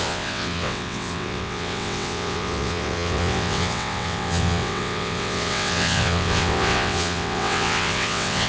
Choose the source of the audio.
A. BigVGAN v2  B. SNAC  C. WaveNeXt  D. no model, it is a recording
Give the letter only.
C